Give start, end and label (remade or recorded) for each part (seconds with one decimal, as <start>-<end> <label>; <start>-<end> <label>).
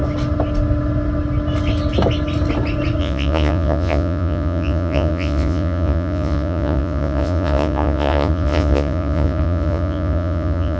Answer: 0.0-3.0 recorded; 3.0-10.8 remade